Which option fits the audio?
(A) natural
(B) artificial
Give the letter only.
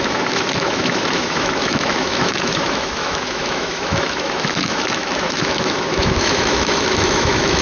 B